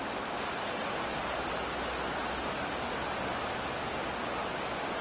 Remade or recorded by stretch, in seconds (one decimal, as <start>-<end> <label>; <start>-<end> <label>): 0.0-5.0 recorded